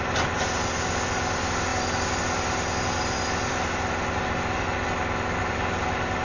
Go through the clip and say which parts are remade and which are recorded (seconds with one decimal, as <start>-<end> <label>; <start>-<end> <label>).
0.0-6.2 recorded